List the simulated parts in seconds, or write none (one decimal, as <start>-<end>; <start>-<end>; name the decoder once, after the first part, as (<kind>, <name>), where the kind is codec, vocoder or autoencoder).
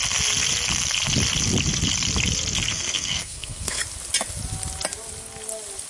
2.7-3.8 (codec, SNAC)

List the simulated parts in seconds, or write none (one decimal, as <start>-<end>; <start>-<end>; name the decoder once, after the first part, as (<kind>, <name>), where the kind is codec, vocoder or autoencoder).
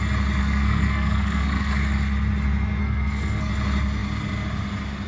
0.4-1.7 (codec, SNAC); 2.8-3.5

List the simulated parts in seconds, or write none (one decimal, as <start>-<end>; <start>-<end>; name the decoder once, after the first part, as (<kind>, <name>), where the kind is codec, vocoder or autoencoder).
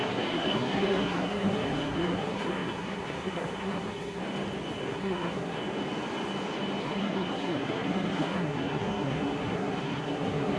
0.0-4.2 (codec, SNAC); 4.9-5.6; 6.8-10.6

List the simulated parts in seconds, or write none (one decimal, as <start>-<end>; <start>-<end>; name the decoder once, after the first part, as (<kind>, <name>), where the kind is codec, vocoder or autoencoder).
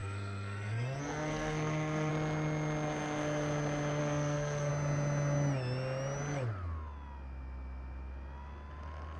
0.0-2.1 (codec, SNAC); 4.0-4.7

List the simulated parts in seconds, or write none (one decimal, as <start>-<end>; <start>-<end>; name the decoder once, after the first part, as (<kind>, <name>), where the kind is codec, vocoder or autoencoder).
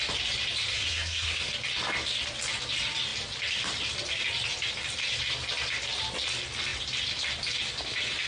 0.7-1.5 (codec, SNAC)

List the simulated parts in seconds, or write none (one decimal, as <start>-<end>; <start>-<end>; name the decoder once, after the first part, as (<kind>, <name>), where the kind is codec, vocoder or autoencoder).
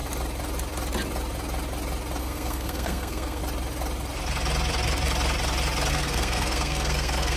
2.2-3.4 (codec, SNAC); 5.9-7.4